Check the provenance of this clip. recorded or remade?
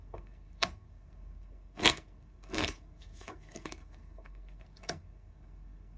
remade